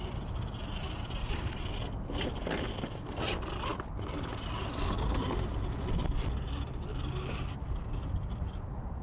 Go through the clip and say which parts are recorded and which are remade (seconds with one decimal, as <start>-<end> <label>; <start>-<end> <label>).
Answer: 0.0-9.0 recorded

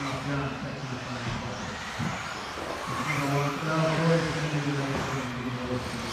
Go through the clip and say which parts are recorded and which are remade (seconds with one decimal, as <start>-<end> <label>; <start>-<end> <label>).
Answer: 0.0-6.1 recorded

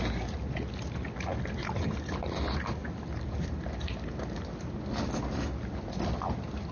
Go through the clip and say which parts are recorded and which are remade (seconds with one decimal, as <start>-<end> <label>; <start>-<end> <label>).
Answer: 0.0-6.7 recorded

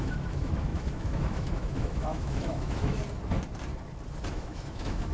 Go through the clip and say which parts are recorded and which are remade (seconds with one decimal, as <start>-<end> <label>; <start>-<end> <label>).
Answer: 0.0-3.0 remade; 3.0-4.3 recorded; 4.3-5.1 remade

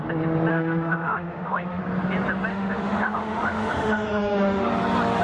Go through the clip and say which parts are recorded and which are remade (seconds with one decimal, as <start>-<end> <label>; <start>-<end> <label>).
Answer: 0.0-0.5 recorded; 0.5-1.8 remade; 1.8-2.5 recorded; 2.5-4.7 remade; 4.7-5.2 recorded

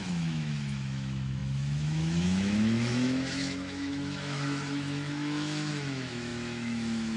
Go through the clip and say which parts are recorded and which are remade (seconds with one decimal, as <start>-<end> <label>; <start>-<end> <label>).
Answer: 0.0-7.2 remade